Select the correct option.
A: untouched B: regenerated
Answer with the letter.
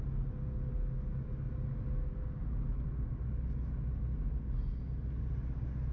A